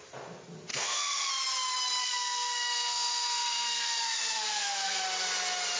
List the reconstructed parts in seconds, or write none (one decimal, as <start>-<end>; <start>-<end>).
0.7-1.3; 2.0-5.0